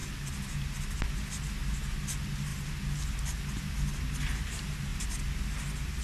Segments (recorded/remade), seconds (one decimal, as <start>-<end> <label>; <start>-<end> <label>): 0.0-6.0 recorded